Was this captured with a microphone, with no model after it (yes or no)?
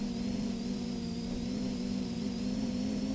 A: no